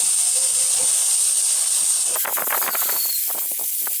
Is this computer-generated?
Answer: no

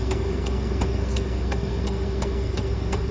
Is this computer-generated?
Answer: yes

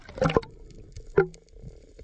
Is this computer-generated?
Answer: no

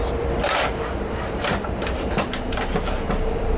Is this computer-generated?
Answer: yes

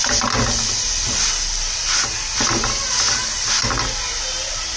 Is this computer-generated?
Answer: no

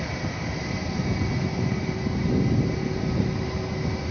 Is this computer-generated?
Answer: no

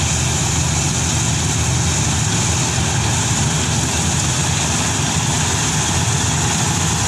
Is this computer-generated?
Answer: no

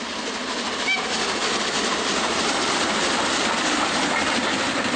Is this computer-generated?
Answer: no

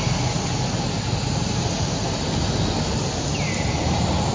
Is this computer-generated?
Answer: no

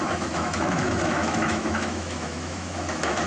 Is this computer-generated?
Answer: yes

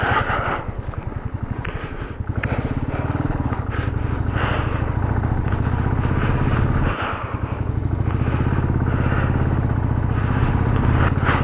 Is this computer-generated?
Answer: no